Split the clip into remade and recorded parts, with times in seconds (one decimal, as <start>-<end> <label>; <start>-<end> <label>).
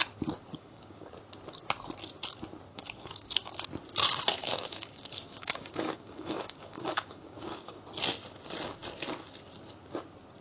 0.0-0.5 recorded; 0.5-1.1 remade; 1.1-2.7 recorded; 2.7-3.5 remade; 3.5-4.4 recorded; 4.4-7.8 remade; 7.8-10.4 recorded